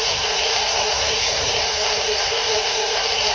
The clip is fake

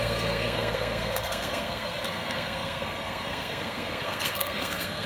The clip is fake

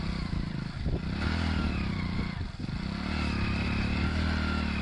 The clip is real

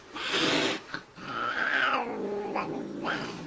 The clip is real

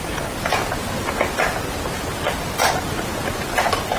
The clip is real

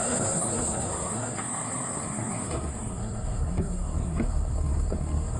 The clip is fake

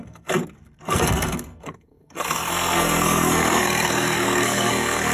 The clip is fake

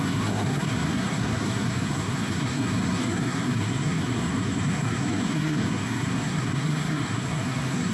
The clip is fake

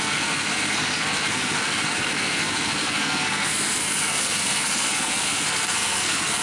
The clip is fake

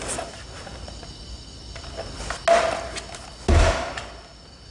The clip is real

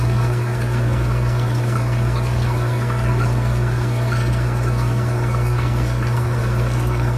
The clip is fake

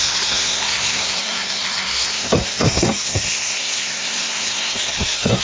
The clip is fake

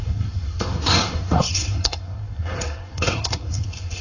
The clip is fake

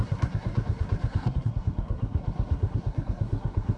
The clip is fake